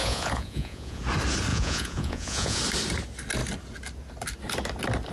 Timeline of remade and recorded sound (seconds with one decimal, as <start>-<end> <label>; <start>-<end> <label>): 0.0-1.0 remade; 1.0-1.5 recorded; 1.5-2.6 remade; 2.6-5.1 recorded